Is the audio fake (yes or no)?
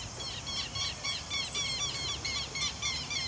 yes